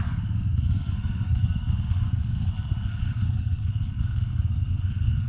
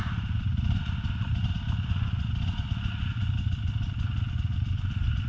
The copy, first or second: first